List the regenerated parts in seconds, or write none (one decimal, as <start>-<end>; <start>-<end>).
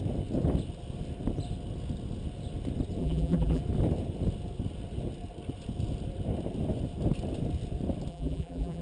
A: 3.0-3.6; 8.1-8.8